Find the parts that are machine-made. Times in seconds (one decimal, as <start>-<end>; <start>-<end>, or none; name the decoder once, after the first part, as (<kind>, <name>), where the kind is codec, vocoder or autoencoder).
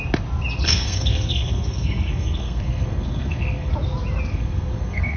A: 0.6-3.7 (codec, SNAC); 4.3-5.2